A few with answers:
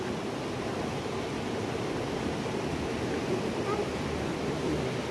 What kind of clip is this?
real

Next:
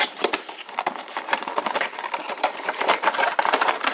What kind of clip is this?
fake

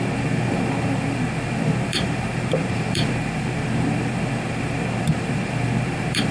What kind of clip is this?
fake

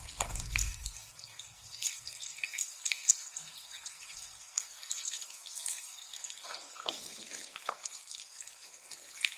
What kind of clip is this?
fake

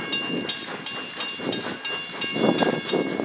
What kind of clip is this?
real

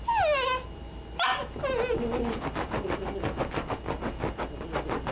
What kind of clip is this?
real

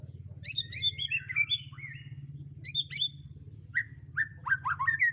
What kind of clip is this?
real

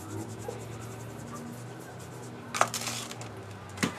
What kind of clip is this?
real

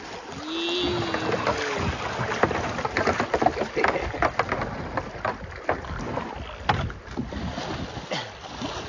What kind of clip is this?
real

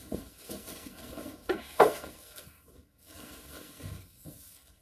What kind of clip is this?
fake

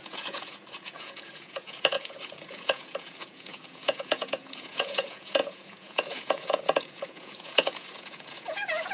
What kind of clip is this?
fake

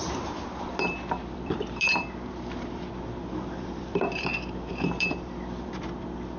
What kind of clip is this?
fake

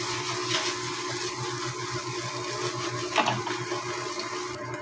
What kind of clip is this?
real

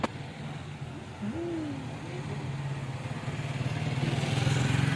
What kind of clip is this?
real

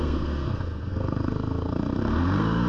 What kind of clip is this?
fake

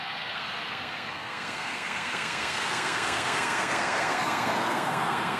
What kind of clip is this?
fake